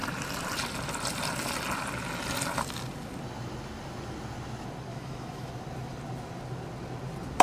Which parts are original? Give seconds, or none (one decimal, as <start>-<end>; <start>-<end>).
0.0-4.9; 5.5-7.4